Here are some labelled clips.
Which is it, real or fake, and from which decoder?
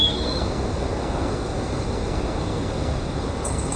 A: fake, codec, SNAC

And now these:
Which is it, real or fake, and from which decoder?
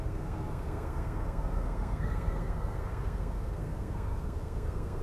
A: fake, codec, SNAC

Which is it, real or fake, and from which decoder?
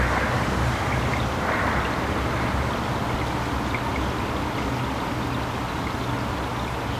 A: real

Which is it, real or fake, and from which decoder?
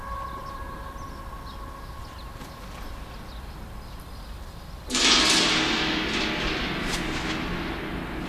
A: real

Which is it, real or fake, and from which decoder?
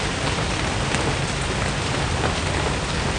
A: real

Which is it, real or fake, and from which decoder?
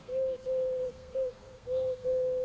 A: fake, codec, SNAC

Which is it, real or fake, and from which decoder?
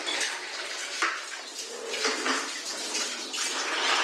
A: real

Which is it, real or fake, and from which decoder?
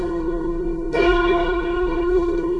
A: fake, codec, SNAC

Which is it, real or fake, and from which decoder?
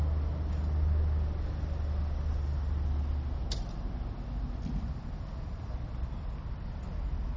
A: real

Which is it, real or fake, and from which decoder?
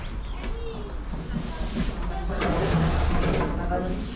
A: real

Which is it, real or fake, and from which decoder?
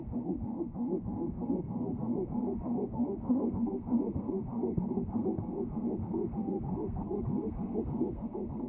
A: fake, codec, SNAC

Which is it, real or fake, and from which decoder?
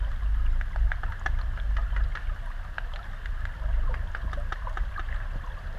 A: real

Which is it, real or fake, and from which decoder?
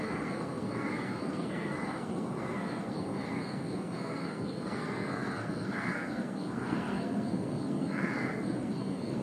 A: fake, codec, SNAC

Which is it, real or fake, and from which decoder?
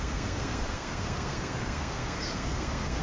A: fake, codec, SNAC